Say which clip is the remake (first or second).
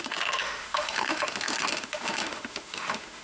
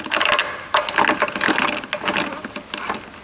first